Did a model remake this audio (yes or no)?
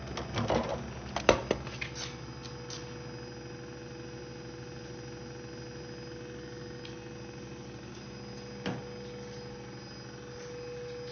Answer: no